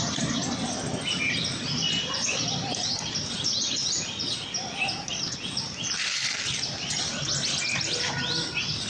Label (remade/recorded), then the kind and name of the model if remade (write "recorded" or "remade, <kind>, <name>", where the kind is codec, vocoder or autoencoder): recorded